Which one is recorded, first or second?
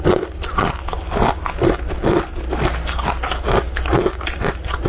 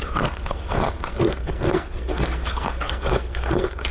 first